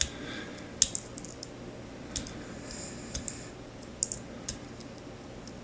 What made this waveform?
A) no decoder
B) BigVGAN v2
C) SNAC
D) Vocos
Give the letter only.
A